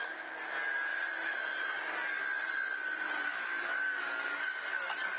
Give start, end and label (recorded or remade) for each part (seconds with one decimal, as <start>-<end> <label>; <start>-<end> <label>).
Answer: 0.0-5.2 recorded